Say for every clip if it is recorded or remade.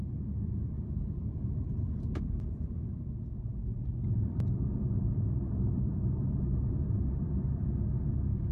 remade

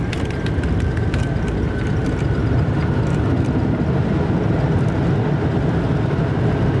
recorded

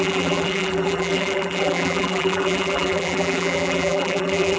remade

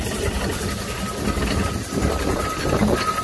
recorded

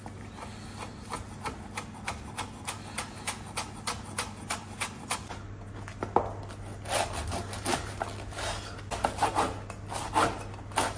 recorded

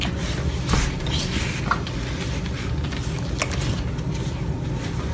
recorded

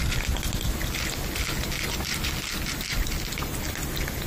recorded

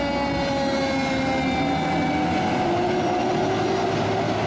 recorded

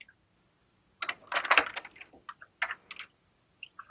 recorded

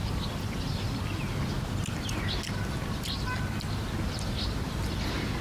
recorded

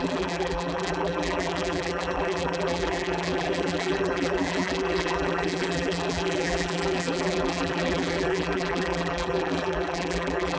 remade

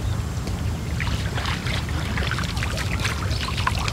recorded